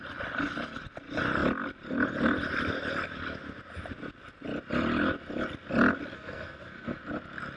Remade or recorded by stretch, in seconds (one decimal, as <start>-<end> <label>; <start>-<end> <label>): 0.0-6.1 recorded; 6.1-7.0 remade; 7.0-7.6 recorded